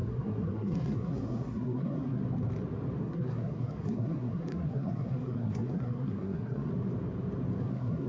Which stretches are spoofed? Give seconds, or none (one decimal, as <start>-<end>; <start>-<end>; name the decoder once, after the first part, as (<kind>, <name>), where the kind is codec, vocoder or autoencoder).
0.0-2.2 (codec, SNAC); 3.0-6.7; 7.6-8.1